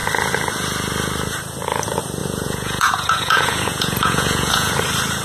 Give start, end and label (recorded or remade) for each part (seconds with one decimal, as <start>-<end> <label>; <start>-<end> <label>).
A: 0.0-2.2 recorded; 2.2-4.7 remade; 4.7-5.2 recorded